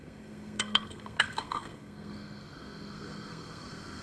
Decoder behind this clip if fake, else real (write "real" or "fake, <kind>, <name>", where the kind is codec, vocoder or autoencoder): fake, codec, SNAC